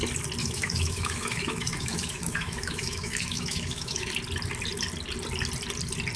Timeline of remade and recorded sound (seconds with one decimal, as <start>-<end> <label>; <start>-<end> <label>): 0.0-0.4 recorded; 0.4-4.1 remade; 4.1-6.2 recorded